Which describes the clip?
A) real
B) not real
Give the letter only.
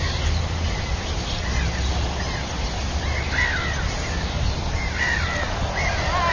A